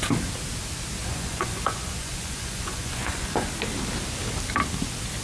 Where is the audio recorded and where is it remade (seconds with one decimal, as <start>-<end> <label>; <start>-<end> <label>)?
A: 0.0-1.0 recorded; 1.0-3.5 remade; 3.5-5.2 recorded